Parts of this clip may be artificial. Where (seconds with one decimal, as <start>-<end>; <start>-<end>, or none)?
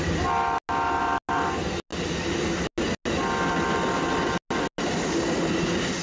none